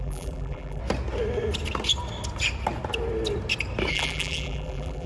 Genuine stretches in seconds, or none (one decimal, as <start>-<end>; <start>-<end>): 0.8-3.9